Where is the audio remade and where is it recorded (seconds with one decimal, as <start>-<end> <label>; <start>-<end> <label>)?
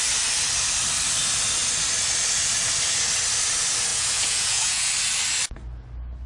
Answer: 0.0-3.9 recorded; 3.9-4.9 remade; 4.9-6.3 recorded